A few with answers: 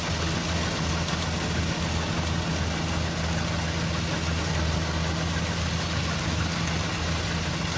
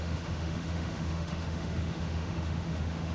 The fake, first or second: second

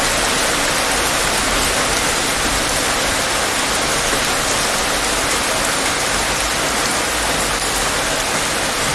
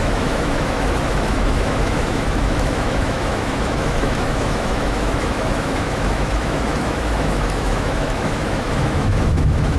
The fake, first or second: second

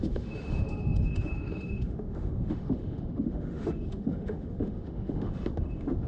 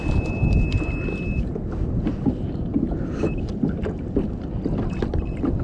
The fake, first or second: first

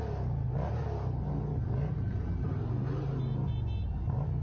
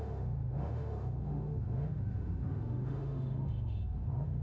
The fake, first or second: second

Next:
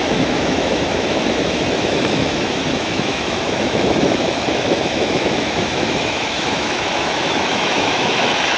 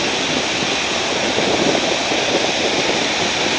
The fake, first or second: first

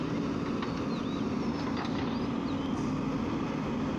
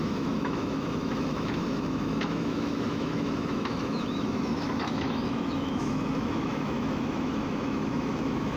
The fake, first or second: second